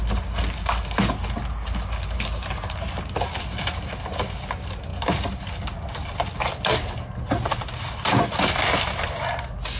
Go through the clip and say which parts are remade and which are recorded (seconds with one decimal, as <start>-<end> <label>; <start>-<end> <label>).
0.0-9.8 recorded